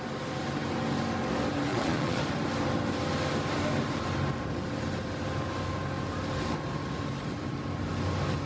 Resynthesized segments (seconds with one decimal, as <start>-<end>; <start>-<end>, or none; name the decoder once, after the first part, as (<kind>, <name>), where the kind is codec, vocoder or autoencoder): 1.7-2.2 (vocoder, Vocos)